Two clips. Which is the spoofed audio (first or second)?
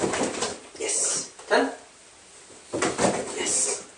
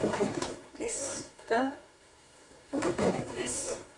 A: second